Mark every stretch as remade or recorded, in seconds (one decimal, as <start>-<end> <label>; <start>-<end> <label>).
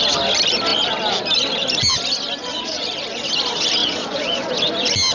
0.0-2.4 recorded; 2.4-2.9 remade; 2.9-3.8 recorded; 3.8-4.5 remade; 4.5-5.1 recorded